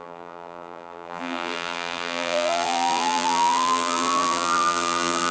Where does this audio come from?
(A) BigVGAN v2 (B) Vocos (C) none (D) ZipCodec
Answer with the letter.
A